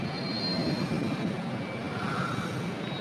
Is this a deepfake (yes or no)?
no